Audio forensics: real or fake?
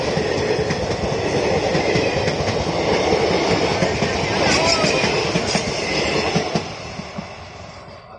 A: real